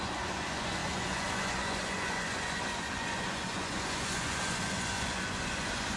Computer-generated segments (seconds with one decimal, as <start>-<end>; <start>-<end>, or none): 0.0-6.0